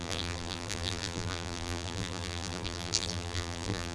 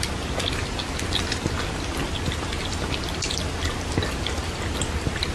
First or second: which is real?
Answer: second